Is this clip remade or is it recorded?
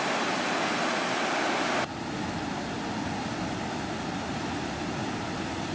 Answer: recorded